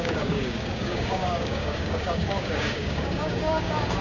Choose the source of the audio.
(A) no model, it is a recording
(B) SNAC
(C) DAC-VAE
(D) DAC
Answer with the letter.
D